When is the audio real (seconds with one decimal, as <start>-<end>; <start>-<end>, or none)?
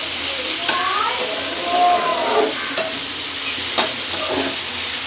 0.0-0.6; 1.1-5.1